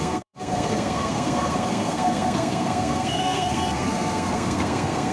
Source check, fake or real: fake